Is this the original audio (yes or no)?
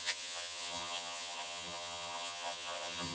no